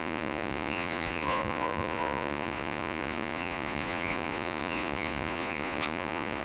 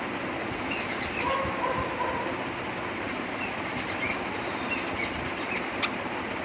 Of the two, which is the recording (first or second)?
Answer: second